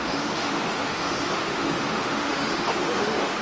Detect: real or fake fake